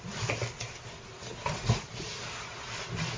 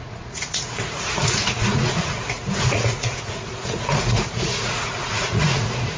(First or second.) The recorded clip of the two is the first